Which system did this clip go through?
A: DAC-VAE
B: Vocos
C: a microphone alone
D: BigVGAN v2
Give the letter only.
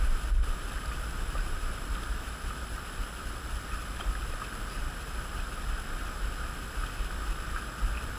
C